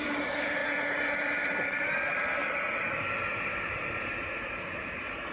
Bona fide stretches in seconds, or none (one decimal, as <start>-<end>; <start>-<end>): 2.4-3.4